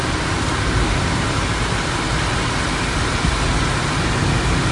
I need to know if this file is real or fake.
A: real